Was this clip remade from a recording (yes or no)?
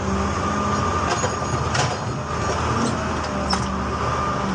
no